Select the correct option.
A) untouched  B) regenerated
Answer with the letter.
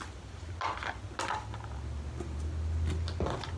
A